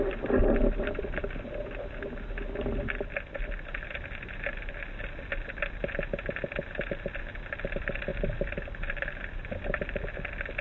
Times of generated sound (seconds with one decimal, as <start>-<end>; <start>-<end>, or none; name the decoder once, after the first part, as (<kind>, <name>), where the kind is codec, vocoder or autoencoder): none